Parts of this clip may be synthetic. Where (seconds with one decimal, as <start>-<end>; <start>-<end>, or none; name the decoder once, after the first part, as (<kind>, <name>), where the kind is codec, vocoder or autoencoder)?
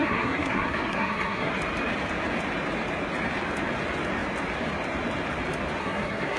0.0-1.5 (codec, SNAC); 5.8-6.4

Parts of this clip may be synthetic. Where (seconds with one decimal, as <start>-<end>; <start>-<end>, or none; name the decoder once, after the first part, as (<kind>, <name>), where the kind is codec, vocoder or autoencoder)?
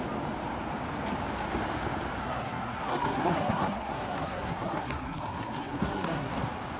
2.2-6.3 (codec, SNAC)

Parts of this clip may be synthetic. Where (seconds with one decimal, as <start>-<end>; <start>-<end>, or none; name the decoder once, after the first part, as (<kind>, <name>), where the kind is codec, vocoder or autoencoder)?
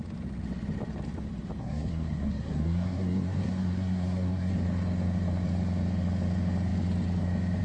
1.6-4.5 (codec, SNAC)